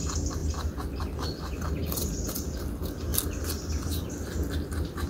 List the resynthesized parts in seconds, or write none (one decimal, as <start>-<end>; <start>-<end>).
none

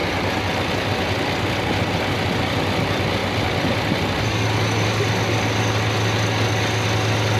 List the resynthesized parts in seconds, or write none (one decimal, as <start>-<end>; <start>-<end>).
none

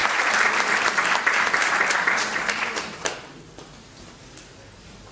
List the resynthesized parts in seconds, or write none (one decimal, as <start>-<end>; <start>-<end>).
0.0-3.1

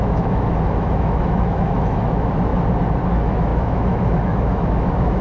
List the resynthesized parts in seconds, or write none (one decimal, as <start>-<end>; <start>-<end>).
0.0-2.5; 3.1-5.2

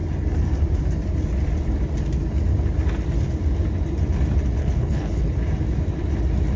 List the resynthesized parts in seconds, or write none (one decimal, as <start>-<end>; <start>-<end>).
4.6-5.3

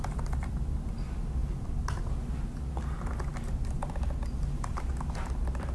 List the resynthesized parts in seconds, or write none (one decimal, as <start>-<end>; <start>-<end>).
none